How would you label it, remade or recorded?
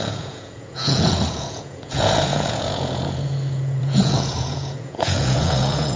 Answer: remade